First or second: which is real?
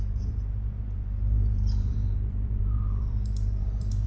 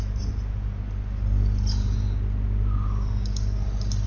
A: second